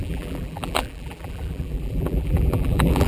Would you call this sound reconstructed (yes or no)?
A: yes